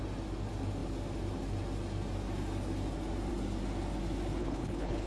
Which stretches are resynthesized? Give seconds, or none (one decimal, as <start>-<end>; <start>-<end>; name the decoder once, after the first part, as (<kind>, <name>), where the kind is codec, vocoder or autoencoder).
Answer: 4.4-5.1 (codec, HILCodec)